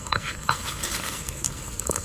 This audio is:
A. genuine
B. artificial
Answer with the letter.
B